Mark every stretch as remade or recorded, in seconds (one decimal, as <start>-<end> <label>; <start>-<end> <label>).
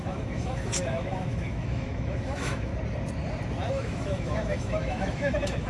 0.0-2.7 remade; 2.7-3.7 recorded; 3.7-5.7 remade